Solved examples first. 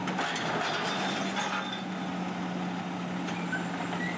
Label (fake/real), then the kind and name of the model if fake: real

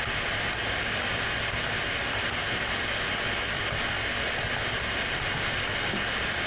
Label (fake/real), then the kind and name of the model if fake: real